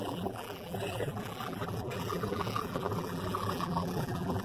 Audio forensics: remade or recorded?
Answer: remade